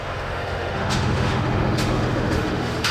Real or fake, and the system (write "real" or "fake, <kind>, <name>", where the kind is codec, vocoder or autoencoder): fake, autoencoder, DAC-VAE